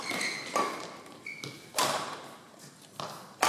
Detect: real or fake real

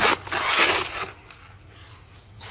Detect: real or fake real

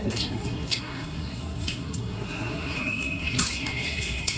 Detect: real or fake fake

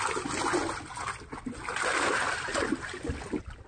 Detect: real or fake real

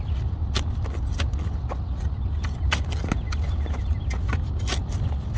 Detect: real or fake real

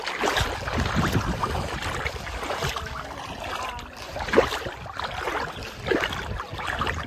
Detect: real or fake real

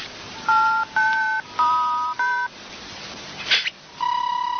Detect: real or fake real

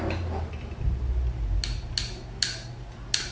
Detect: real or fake real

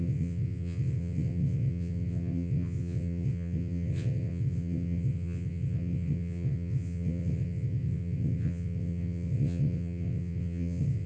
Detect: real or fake fake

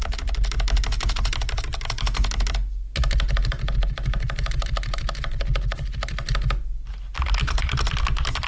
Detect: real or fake real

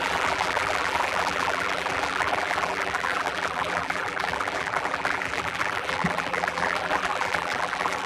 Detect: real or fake fake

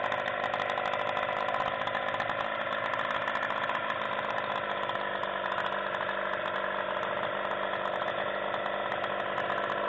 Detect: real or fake real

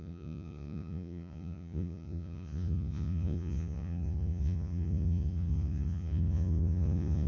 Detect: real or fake fake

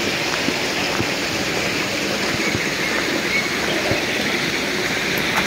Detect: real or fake real